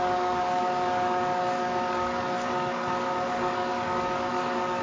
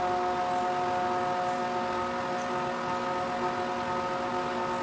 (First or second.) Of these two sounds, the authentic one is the second